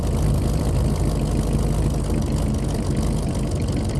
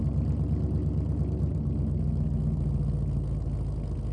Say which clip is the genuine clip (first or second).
second